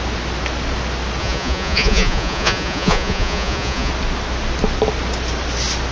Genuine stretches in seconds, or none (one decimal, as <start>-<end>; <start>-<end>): 0.0-1.2; 3.9-5.9